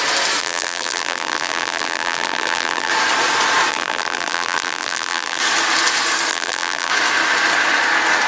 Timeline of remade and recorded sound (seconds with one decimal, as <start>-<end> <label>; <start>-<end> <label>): 0.0-0.4 recorded; 0.4-2.9 remade; 2.9-3.7 recorded; 3.7-5.4 remade; 5.4-6.3 recorded; 6.3-6.9 remade; 6.9-8.3 recorded

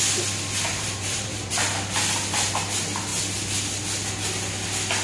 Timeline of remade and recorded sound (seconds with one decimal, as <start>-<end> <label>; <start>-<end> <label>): 0.0-0.7 recorded; 0.7-1.6 remade; 1.6-5.0 recorded

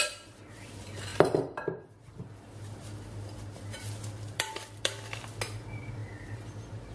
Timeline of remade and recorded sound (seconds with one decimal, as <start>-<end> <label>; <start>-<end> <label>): 0.0-1.1 recorded; 1.1-5.2 remade; 5.2-6.0 recorded; 6.0-6.5 remade; 6.5-6.9 recorded

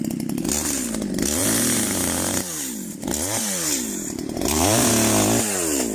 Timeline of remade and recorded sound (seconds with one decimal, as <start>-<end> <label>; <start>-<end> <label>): 0.0-1.4 recorded; 1.4-4.9 remade; 4.9-5.9 recorded

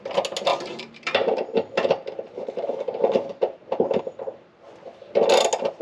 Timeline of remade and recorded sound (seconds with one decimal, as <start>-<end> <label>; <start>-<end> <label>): 0.0-0.5 recorded; 0.5-4.0 remade; 4.0-5.8 recorded

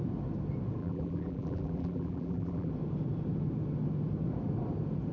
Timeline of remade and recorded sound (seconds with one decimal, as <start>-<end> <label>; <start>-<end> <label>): 0.0-0.8 recorded; 0.8-2.7 remade; 2.7-5.1 recorded